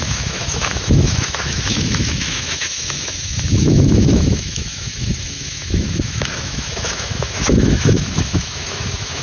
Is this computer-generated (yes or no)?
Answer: yes